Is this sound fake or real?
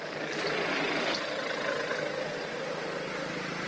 real